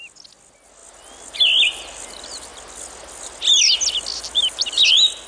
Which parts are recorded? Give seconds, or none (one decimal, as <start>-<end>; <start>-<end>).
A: 0.0-5.3